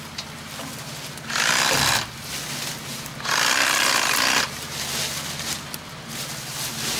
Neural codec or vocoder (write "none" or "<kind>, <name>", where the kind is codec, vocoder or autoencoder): none